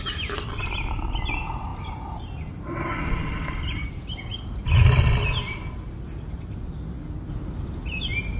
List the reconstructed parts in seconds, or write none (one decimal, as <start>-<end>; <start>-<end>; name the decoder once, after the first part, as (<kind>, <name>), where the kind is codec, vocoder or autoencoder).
none